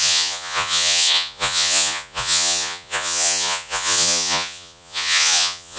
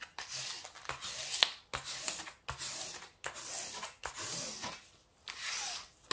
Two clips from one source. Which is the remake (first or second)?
first